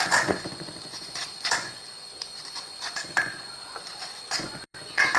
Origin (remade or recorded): remade